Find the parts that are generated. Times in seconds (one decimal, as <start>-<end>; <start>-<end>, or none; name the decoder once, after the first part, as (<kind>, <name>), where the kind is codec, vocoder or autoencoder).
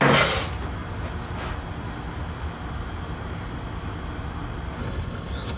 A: 4.8-5.6 (codec, HILCodec)